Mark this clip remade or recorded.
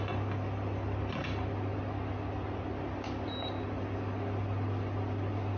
recorded